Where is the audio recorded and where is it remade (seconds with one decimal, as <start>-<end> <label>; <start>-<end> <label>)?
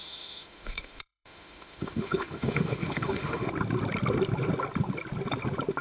0.0-3.5 remade; 3.5-5.8 recorded